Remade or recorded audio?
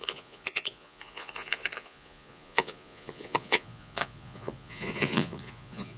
remade